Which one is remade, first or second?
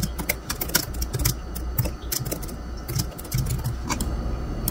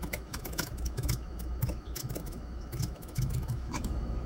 second